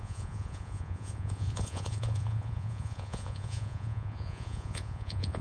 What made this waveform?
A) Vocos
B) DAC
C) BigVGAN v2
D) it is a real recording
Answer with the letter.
A